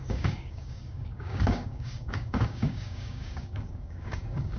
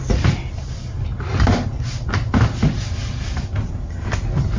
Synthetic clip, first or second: first